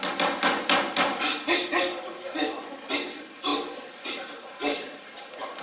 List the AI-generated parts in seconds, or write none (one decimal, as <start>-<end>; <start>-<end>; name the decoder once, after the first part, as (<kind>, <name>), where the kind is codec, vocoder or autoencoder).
none